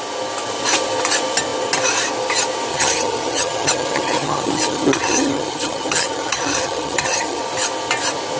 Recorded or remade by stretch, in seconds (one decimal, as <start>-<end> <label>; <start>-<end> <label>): 0.0-2.7 recorded; 2.7-7.4 remade; 7.4-8.4 recorded